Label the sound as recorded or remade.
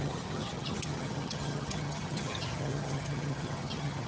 remade